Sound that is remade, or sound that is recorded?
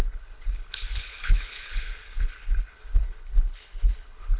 remade